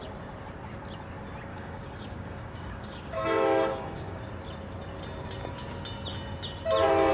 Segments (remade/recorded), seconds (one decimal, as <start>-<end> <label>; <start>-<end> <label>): 0.0-1.5 recorded; 1.5-4.2 remade; 4.2-7.1 recorded